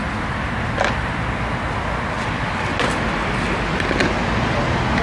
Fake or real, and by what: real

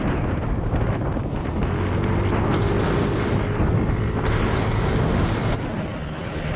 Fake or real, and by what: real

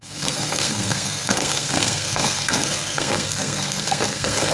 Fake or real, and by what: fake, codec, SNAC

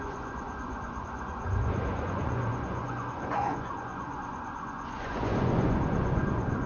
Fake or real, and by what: fake, vocoder, Vocos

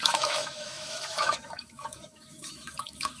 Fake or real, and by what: fake, autoencoder, DAC-VAE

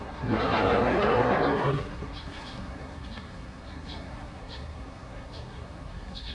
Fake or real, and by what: fake, codec, SNAC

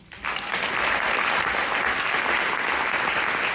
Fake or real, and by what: real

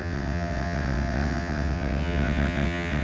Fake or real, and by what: fake, vocoder, WaveNeXt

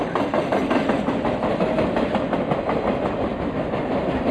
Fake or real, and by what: real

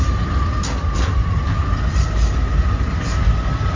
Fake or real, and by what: real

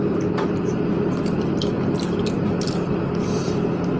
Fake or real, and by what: real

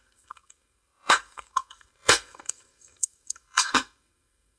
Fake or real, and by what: fake, codec, SNAC